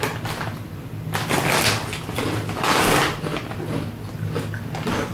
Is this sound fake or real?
real